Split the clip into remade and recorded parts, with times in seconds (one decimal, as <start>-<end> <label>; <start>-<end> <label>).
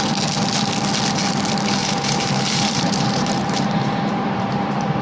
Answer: 0.0-1.8 recorded; 1.8-4.5 remade; 4.5-5.0 recorded